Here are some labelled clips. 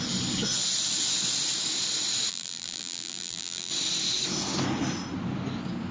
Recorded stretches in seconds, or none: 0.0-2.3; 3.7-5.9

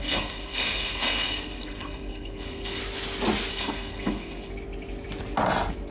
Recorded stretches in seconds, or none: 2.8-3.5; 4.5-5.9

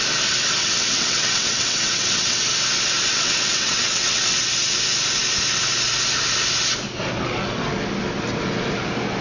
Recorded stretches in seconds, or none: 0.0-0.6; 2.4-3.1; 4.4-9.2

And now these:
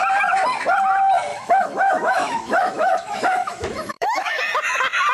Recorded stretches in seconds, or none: 0.0-1.3; 4.4-5.1

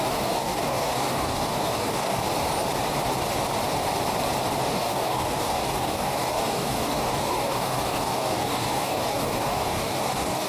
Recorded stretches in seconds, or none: 2.2-4.6

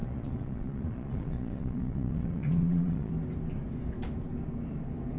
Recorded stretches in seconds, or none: 3.1-5.2